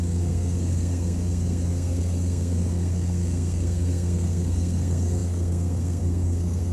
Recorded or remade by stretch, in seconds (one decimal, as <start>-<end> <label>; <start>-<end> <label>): 0.0-6.7 remade